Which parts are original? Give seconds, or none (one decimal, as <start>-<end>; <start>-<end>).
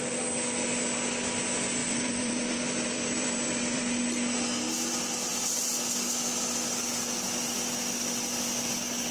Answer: 0.0-1.8; 3.8-9.1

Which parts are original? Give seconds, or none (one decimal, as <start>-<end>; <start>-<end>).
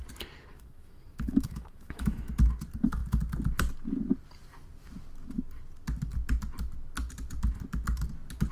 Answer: 0.0-0.5; 2.3-8.5